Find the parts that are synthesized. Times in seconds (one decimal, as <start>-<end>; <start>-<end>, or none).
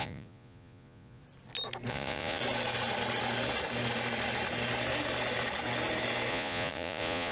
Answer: 0.0-1.2; 1.9-2.4; 6.3-7.3